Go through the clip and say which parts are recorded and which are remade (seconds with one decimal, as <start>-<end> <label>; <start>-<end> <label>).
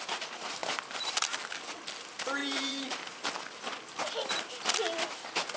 0.0-2.4 recorded; 2.4-4.5 remade; 4.5-5.6 recorded